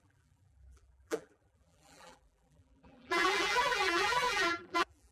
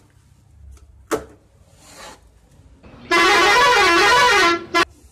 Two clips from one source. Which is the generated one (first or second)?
first